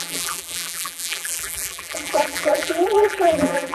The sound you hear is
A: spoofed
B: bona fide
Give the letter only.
A